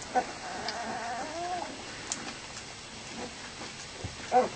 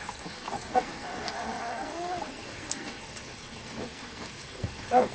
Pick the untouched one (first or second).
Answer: first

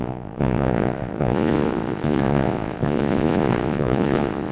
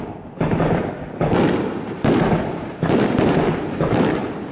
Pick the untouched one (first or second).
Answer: second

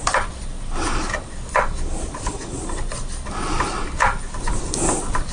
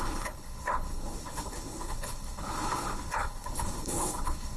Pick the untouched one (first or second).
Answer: first